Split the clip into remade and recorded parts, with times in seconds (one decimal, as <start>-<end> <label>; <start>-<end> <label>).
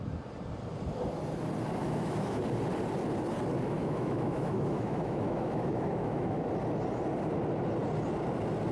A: 0.0-1.8 recorded; 1.8-2.4 remade; 2.4-3.8 recorded; 3.8-6.5 remade; 6.5-8.7 recorded